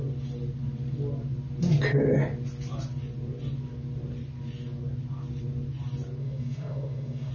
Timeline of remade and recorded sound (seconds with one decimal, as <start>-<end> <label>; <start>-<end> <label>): 0.0-6.2 recorded; 6.2-7.3 remade